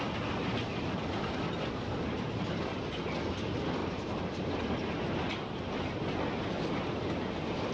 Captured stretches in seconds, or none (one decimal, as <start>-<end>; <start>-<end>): 0.0-3.8; 4.5-7.7